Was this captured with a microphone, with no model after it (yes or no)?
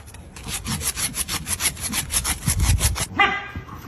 yes